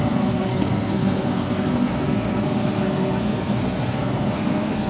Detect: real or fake fake